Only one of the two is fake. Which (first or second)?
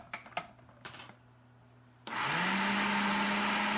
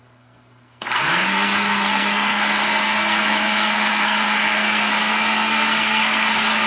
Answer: second